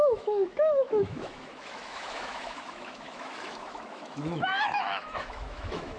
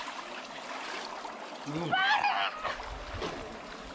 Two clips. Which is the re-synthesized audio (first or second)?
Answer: first